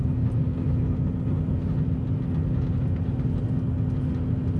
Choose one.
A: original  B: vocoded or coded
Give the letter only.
A